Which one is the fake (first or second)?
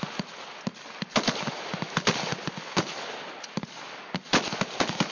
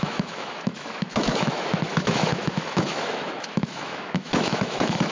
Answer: second